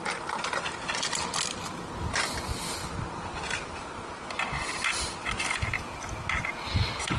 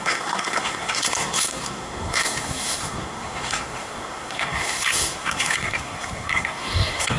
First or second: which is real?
first